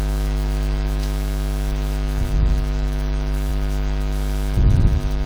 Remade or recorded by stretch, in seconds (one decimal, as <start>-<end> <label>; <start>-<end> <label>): 0.0-5.3 remade